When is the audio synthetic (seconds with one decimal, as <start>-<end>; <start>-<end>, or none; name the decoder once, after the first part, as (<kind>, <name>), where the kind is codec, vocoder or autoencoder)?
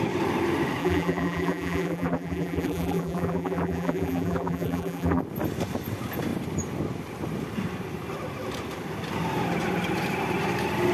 0.8-5.2 (vocoder, BigVGAN v2)